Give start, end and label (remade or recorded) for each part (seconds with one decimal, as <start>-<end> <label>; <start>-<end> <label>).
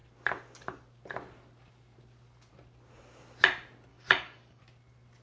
0.0-3.9 recorded; 3.9-4.6 remade; 4.6-5.2 recorded